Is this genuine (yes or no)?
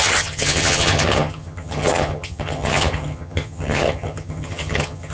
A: no